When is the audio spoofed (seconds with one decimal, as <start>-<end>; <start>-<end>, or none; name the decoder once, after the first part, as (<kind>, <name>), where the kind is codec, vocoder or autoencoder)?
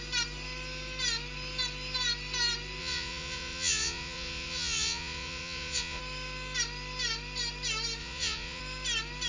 2.8-6.0 (vocoder, Vocos); 8.0-8.6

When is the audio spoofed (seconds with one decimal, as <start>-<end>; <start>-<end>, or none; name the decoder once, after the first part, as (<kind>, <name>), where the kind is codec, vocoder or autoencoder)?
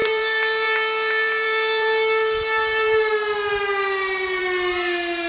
0.0-3.1 (vocoder, BigVGAN v2)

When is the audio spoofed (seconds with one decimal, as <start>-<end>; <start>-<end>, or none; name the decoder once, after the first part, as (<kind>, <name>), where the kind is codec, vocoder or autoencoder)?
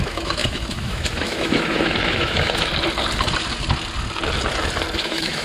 0.0-2.7 (autoencoder, DAC-VAE); 5.0-5.4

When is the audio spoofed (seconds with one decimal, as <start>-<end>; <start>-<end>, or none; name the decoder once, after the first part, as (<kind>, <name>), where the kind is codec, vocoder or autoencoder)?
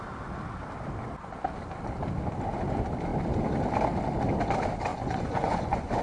4.9-6.0 (vocoder, Vocos)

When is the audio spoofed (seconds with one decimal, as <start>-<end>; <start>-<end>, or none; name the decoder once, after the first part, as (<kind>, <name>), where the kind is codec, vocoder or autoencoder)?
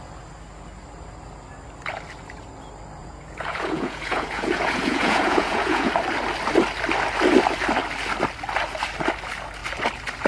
3.0-5.9 (vocoder, Vocos)